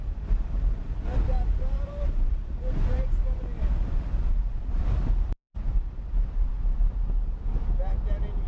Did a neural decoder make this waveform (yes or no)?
yes